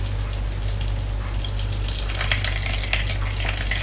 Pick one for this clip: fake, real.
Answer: real